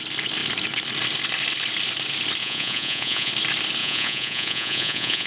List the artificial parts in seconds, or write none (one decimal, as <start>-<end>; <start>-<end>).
2.4-3.3; 3.8-5.3